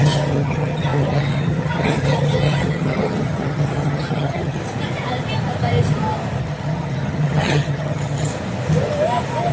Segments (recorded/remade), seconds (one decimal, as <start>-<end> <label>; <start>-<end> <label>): 0.0-4.6 remade; 4.6-6.4 recorded; 6.4-8.3 remade; 8.3-9.5 recorded